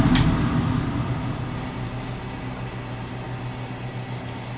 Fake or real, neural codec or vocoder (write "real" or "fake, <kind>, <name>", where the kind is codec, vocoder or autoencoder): real